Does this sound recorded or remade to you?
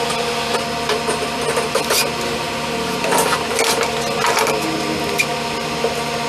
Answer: recorded